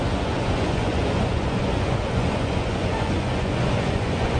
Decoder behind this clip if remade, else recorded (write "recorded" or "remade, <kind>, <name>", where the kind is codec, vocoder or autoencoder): remade, vocoder, Vocos